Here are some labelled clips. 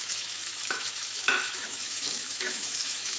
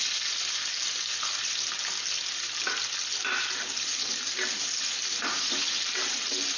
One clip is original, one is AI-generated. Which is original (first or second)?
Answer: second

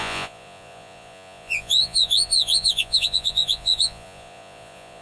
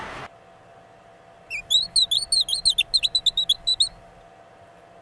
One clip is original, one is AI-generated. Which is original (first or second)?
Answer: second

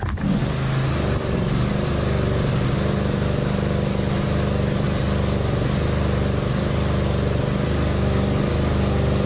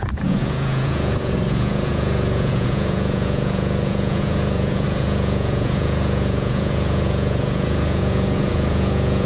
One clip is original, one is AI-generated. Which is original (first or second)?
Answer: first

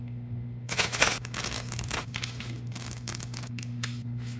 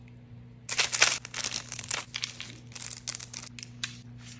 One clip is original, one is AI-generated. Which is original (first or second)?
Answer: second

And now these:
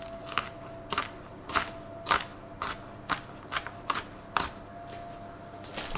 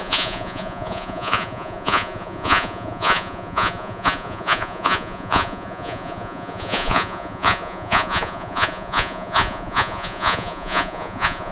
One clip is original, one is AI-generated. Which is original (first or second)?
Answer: first